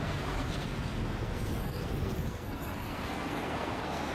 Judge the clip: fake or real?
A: fake